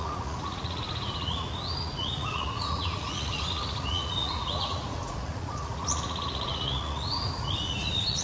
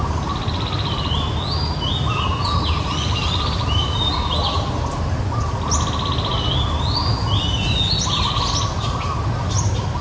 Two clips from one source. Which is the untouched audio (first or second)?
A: second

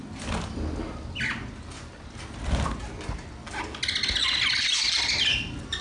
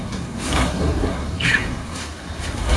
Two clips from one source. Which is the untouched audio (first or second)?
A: first